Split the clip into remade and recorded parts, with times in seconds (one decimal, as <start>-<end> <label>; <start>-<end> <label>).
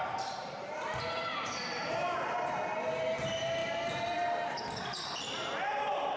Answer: 0.0-6.2 remade